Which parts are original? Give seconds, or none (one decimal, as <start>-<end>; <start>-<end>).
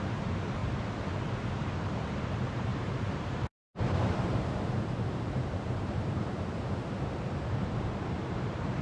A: 0.6-1.4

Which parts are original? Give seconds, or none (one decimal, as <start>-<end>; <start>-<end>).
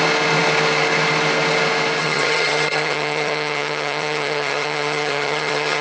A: 0.0-2.0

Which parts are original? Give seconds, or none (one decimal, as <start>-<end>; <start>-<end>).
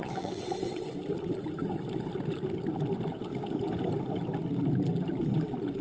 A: 0.9-5.8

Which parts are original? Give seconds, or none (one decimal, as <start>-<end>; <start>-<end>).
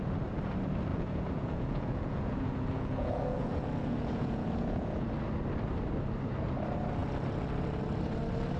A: 0.0-0.9; 5.1-8.6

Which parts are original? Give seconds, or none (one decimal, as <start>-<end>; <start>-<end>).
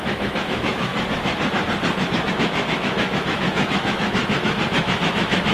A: 0.9-2.3; 4.2-4.8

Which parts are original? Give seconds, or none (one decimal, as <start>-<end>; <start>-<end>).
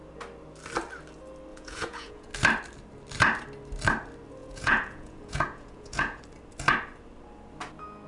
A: 0.0-1.5; 2.3-4.4; 6.2-8.1